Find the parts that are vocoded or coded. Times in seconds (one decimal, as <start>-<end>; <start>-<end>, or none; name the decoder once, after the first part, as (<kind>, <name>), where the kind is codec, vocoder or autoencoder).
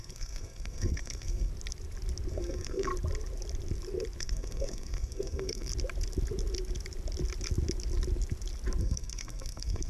0.0-1.5 (codec, SNAC); 2.3-2.9; 4.2-5.7; 8.8-9.9